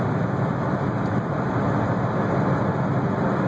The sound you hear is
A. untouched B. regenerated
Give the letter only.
A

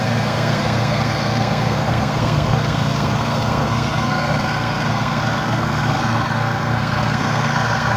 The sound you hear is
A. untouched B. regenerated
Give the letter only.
B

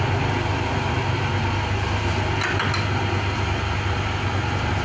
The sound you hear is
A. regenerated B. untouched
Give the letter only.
B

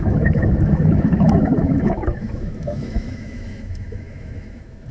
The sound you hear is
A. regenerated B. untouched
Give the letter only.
A